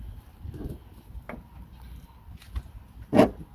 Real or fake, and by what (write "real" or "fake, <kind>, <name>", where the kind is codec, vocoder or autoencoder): real